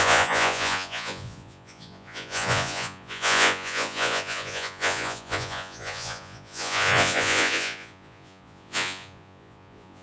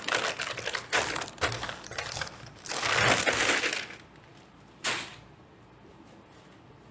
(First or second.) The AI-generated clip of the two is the first